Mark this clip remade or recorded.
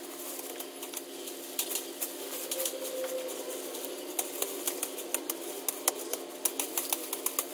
recorded